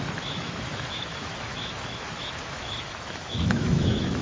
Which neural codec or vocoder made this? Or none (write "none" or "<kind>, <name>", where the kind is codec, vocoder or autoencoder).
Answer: autoencoder, DAC-VAE